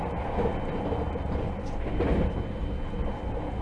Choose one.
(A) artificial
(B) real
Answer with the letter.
B